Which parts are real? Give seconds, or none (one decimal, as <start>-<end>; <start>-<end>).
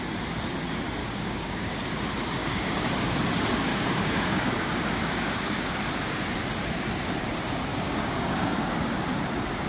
0.0-1.0; 1.7-2.4; 3.2-3.7; 5.7-7.7; 8.7-9.7